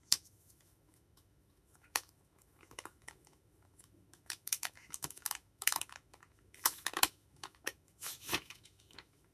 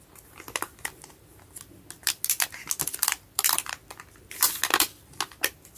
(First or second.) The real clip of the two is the second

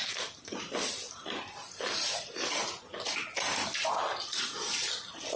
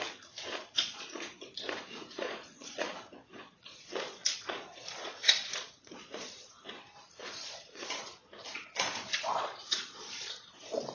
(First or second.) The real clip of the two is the first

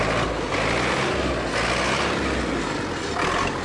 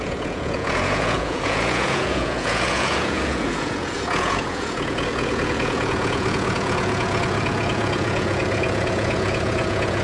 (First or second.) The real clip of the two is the first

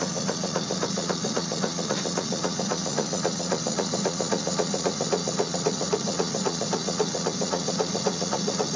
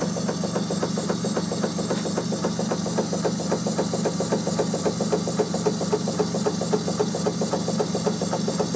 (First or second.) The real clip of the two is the second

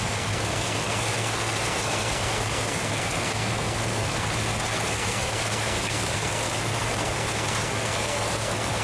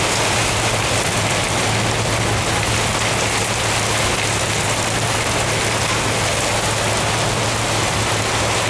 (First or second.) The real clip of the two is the second